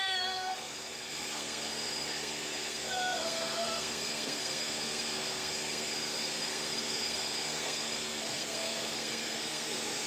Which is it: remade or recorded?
remade